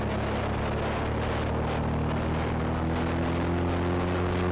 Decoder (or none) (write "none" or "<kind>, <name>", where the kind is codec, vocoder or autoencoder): none